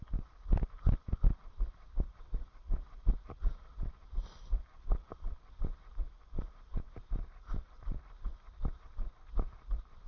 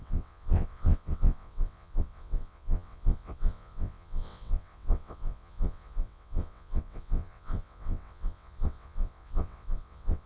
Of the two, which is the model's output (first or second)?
second